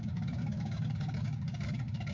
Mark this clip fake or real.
fake